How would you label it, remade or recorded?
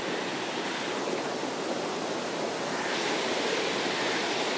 recorded